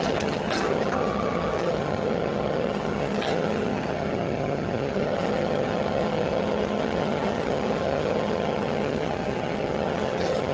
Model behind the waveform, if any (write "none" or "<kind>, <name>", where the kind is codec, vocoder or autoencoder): vocoder, HiFi-GAN